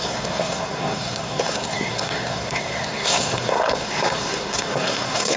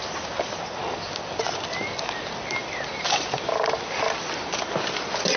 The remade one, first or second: first